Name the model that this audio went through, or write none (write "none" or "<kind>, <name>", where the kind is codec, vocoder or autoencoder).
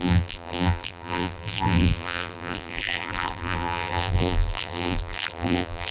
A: vocoder, BigVGAN v2